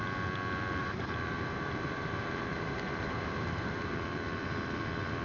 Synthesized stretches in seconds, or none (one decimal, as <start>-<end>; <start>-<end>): 0.8-3.9